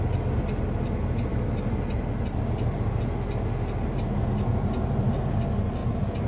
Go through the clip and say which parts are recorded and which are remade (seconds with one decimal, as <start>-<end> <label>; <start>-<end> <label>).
0.0-6.3 recorded